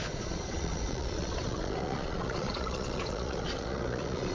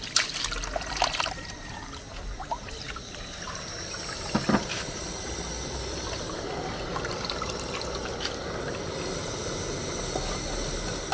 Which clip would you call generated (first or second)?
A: first